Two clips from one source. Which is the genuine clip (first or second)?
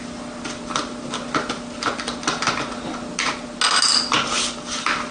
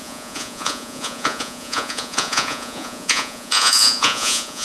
first